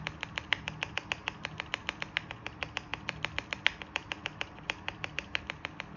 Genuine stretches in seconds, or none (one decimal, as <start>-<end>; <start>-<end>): 0.0-1.2; 1.7-2.9; 5.4-6.0